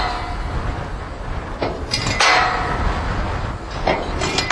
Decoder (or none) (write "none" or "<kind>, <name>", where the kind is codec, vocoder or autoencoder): none